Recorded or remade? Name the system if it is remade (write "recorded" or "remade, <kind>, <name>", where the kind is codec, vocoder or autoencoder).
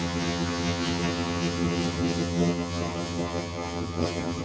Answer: remade, vocoder, HiFi-GAN